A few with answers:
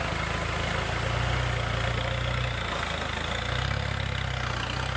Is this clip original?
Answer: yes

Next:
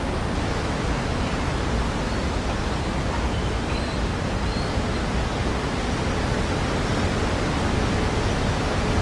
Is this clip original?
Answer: yes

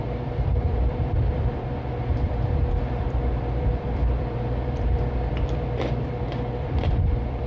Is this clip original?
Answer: no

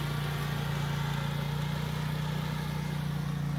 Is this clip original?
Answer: yes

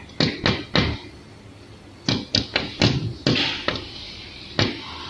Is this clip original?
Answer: yes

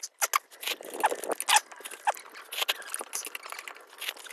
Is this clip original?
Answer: yes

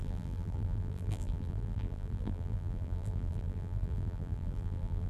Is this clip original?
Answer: no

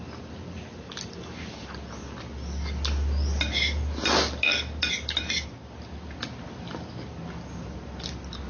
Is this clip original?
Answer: yes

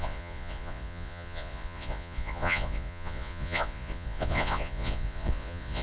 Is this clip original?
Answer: no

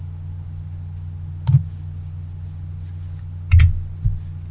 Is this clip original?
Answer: yes